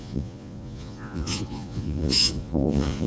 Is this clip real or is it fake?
fake